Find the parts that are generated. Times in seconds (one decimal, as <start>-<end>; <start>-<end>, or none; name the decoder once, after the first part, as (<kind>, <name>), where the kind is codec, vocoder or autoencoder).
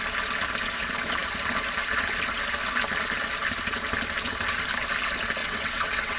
5.4-6.2 (vocoder, WaveNeXt)